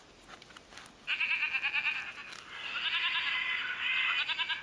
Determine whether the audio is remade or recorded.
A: recorded